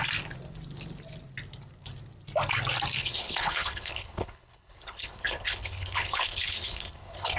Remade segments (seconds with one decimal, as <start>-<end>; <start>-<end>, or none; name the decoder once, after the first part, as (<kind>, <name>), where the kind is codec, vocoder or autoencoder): 3.0-7.4 (codec, HILCodec)